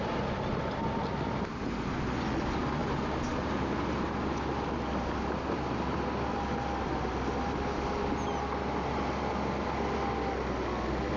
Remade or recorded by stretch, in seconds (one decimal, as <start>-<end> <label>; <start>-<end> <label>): 0.0-11.2 recorded